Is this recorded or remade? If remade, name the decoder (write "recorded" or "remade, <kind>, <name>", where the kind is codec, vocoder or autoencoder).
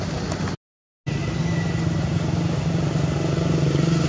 recorded